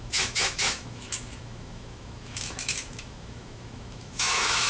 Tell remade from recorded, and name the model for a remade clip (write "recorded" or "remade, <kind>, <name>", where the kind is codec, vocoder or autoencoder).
remade, autoencoder, DAC-VAE